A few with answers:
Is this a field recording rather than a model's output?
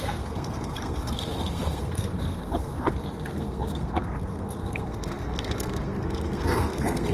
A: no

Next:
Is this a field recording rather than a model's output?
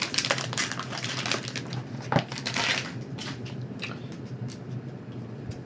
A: yes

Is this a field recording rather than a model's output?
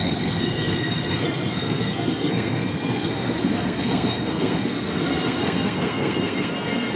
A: no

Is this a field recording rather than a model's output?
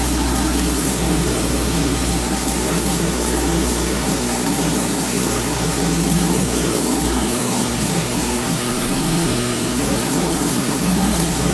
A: no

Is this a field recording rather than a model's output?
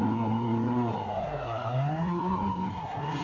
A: no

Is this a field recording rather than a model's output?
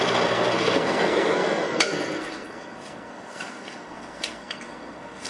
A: no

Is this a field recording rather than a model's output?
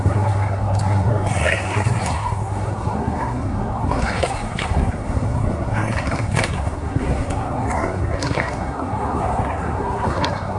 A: no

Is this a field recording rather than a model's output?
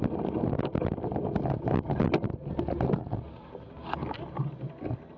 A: yes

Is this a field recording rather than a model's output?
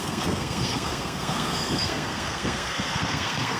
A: no